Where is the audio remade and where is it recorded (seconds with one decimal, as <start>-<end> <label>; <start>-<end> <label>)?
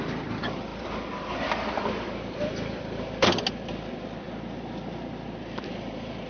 0.0-6.3 recorded